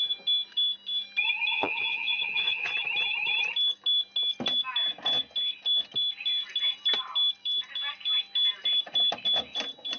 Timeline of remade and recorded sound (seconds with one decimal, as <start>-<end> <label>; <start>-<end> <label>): 0.0-1.5 recorded; 1.5-2.7 remade; 2.7-10.0 recorded